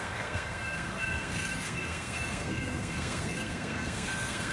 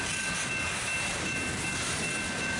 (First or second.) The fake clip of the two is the first